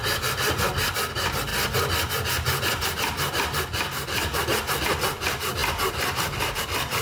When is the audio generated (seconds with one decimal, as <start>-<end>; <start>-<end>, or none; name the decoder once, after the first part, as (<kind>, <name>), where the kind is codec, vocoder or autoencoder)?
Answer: 0.0-0.7 (vocoder, BigVGAN v2); 5.6-6.6